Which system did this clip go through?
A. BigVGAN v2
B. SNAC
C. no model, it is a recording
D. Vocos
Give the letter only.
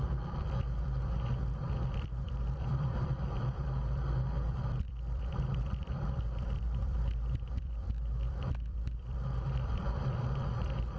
A